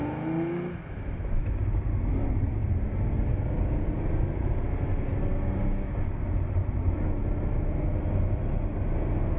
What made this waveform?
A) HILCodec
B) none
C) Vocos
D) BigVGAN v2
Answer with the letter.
B